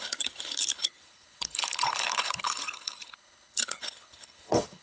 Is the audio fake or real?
fake